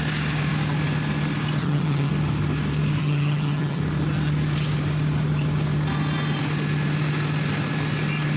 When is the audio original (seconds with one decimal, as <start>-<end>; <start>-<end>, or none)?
0.0-1.6; 2.1-3.0; 3.8-8.4